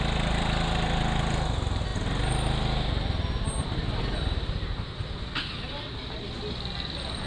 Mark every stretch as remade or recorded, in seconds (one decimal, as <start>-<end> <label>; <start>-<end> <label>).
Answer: 0.0-7.3 recorded